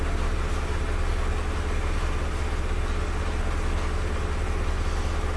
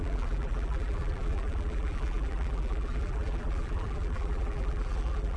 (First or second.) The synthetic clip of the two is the second